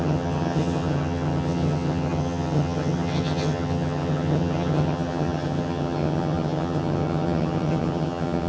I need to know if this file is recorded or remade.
remade